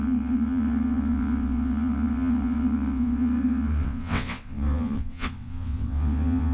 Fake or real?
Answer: fake